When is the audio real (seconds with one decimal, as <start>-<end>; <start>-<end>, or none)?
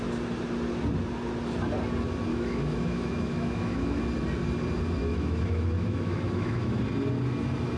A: 0.0-2.3; 4.0-5.0; 6.8-7.8